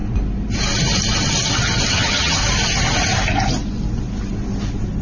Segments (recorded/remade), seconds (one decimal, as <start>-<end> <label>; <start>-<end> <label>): 0.0-1.9 recorded; 1.9-2.4 remade; 2.4-5.0 recorded